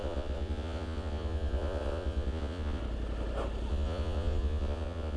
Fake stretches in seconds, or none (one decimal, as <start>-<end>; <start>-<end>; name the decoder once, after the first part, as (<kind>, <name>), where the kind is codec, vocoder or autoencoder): 0.0-2.8 (vocoder, Vocos); 3.7-5.2